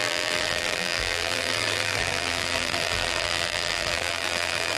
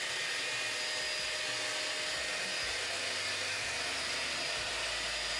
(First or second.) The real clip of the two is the second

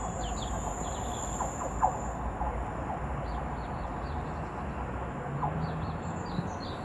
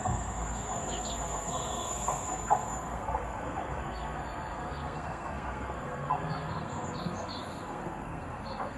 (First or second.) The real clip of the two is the first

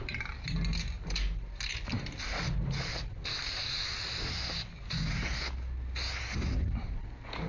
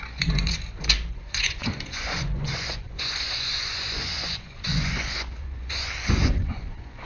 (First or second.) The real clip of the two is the first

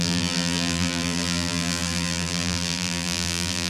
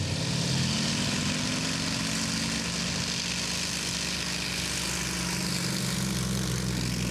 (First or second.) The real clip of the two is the second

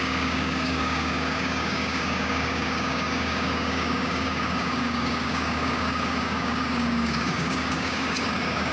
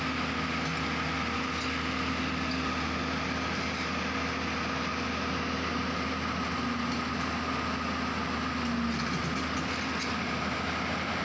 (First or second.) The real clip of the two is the second